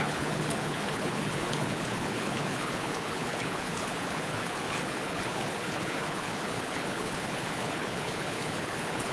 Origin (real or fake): fake